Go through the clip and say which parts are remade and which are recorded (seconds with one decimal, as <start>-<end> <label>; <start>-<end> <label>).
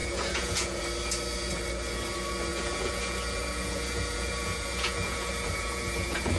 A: 0.0-0.8 remade; 0.8-2.5 recorded; 2.5-6.4 remade